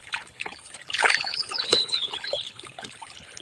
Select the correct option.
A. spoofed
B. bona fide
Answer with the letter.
A